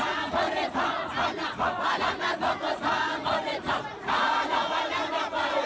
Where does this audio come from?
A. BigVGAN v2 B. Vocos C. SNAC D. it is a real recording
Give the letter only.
B